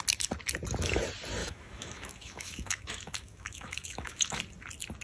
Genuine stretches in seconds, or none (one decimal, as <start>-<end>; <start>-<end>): 0.0-1.4; 4.4-5.0